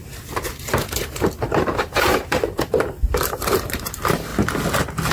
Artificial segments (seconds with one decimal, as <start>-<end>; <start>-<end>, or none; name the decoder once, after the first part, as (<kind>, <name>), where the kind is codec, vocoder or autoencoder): 0.0-4.3 (vocoder, BigVGAN v2)